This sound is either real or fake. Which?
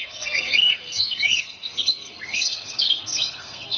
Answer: fake